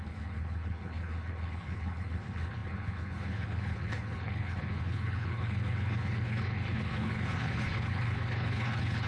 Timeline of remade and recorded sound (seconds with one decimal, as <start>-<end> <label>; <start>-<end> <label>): 0.0-9.1 remade